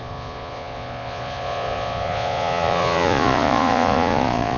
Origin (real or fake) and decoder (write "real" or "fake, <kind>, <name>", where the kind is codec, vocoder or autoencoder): fake, vocoder, Vocos